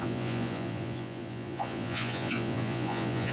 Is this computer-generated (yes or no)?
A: yes